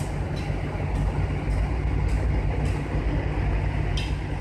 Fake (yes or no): no